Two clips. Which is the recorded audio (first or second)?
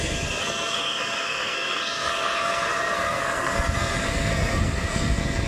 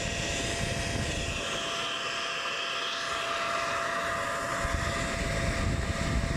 second